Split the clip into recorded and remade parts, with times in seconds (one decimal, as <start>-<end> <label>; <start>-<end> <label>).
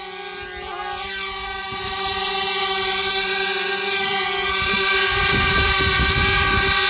0.0-1.6 recorded; 1.6-5.7 remade; 5.7-6.9 recorded